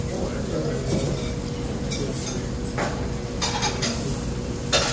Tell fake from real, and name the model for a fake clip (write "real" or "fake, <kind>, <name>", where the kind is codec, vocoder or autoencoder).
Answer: real